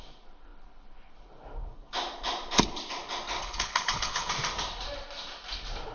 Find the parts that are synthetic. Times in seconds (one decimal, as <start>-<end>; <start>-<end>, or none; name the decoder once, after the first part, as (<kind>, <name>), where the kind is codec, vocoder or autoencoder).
3.4-4.3 (codec, HILCodec)